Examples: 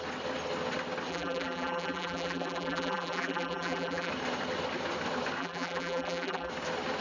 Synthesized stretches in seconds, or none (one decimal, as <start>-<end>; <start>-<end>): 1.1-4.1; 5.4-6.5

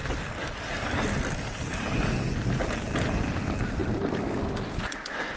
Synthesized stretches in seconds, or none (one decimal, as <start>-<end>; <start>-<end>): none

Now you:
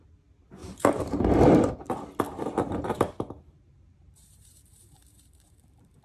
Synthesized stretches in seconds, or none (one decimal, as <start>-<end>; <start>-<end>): 0.6-1.7; 2.3-6.0